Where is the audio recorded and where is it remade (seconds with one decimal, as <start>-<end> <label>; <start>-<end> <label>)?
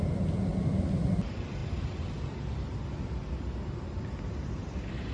0.0-5.1 recorded